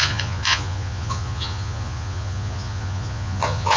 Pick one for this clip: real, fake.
fake